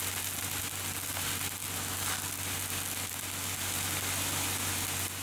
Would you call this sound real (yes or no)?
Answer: yes